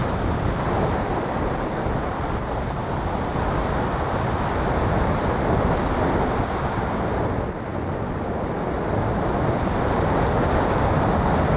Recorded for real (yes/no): yes